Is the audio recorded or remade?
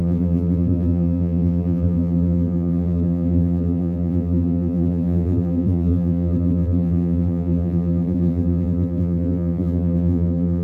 remade